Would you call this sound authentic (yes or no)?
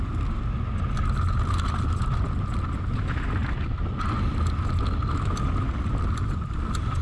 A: yes